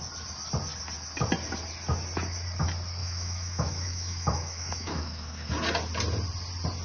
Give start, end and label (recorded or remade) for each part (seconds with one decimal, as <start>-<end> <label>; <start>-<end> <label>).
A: 0.0-3.0 recorded; 3.0-5.5 remade; 5.5-6.8 recorded